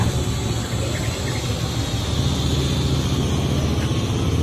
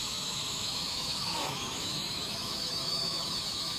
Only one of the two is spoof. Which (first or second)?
second